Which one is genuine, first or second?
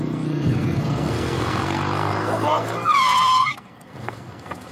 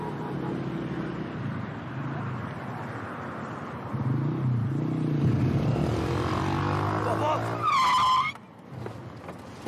second